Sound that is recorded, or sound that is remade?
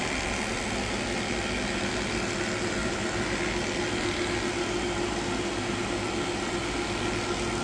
recorded